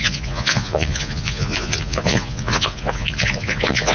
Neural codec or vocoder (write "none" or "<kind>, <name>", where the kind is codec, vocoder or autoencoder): vocoder, Vocos